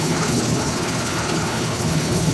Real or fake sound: fake